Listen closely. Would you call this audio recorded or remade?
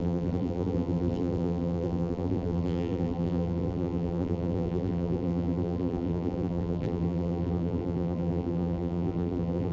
remade